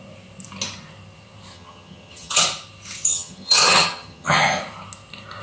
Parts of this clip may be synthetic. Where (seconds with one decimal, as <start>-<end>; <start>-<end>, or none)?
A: 1.5-2.4; 3.1-4.6